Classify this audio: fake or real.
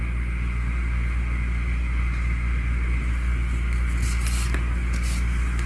real